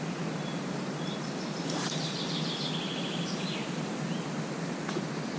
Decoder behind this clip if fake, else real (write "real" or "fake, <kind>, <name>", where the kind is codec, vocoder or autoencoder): real